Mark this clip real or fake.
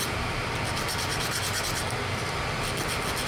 real